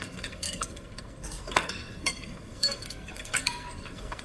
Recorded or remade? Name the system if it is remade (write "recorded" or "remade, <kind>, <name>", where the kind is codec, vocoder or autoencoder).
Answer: remade, codec, SNAC